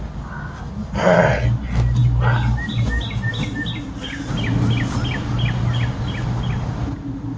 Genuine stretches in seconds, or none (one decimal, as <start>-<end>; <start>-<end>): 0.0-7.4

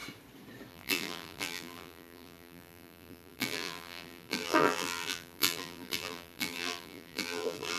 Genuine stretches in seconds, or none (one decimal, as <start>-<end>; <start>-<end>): 0.0-0.7

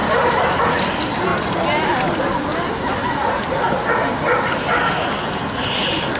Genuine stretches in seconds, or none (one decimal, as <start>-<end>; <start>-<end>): 0.6-1.3; 3.8-6.2

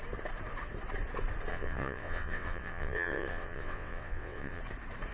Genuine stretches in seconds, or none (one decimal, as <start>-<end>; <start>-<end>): 0.0-1.5; 4.6-5.1

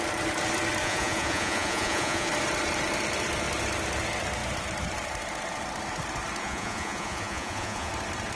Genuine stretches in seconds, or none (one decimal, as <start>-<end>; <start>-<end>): 0.0-0.8; 2.3-6.4; 7.9-8.4